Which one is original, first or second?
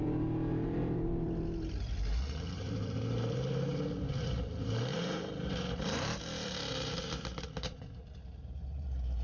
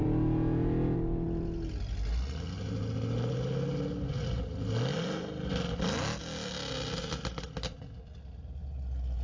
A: second